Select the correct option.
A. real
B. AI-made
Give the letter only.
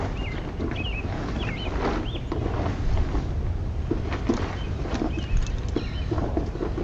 A